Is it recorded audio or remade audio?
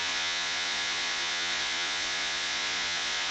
remade